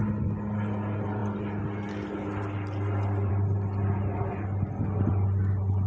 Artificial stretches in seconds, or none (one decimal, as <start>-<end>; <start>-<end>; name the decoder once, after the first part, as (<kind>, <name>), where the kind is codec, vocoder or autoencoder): none